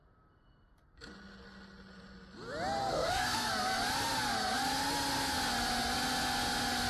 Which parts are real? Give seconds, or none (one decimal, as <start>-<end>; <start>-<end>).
0.0-2.8; 3.5-6.9